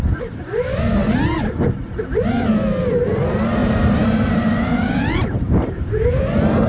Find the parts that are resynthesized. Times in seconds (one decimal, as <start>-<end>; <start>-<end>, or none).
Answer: 3.6-6.2